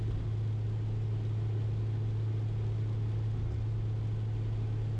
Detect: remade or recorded recorded